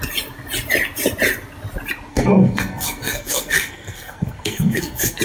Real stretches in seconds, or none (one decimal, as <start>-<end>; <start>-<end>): 0.0-2.1